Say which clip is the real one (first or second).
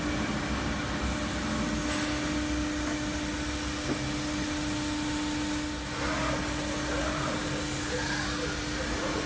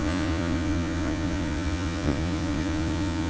first